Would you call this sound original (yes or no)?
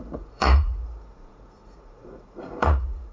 no